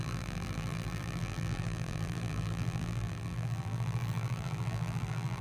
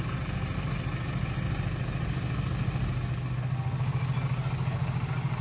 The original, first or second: second